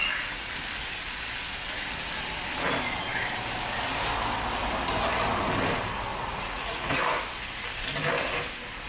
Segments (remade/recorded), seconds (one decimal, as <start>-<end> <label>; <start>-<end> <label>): 0.0-0.5 remade; 0.5-6.1 recorded; 6.1-7.0 remade; 7.0-8.9 recorded